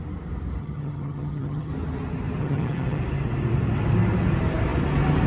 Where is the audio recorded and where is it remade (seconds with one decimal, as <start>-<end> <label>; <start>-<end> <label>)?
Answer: 0.0-0.6 recorded; 0.6-1.7 remade; 1.7-2.4 recorded; 2.4-3.0 remade; 3.0-5.3 recorded